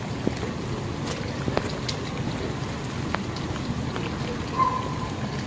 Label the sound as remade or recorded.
recorded